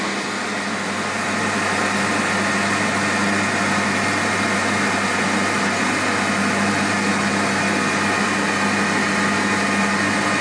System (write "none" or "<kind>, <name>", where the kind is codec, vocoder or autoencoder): none